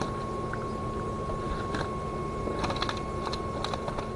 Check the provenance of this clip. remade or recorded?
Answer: recorded